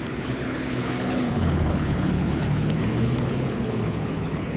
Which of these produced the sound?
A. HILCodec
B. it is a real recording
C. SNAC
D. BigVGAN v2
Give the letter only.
A